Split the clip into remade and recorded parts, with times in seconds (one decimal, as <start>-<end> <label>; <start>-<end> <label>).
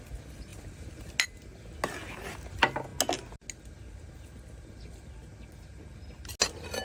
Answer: 0.0-0.5 recorded; 0.5-1.1 remade; 1.1-6.8 recorded